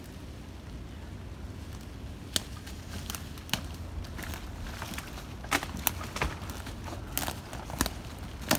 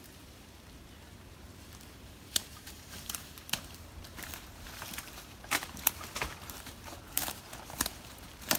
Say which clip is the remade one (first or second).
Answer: second